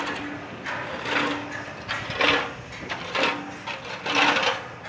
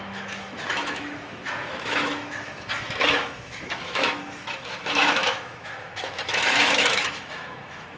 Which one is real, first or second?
first